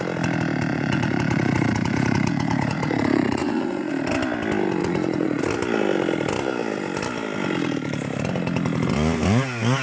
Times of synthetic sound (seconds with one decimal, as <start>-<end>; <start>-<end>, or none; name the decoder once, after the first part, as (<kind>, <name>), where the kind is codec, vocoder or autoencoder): 0.7-3.9 (vocoder, Vocos); 4.8-5.4